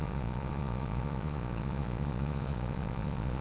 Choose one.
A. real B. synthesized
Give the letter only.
B